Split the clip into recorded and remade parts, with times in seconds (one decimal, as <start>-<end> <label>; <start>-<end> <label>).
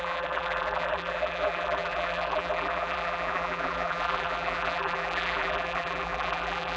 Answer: 0.0-6.8 remade